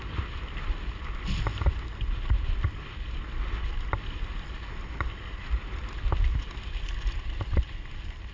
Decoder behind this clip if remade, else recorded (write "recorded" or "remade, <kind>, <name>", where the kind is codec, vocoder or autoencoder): recorded